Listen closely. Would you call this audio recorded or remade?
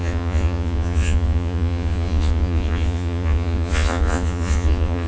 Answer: remade